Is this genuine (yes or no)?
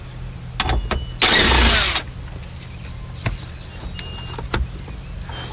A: yes